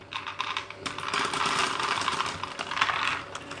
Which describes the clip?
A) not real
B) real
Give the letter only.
A